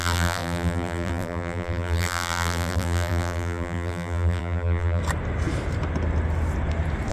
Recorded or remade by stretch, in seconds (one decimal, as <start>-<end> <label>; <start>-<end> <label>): 0.0-5.0 remade; 5.0-7.1 recorded